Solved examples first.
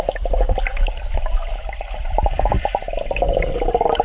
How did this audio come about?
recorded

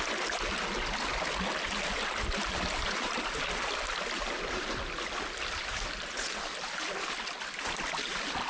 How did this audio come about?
recorded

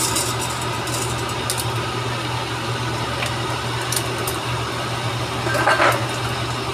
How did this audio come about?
recorded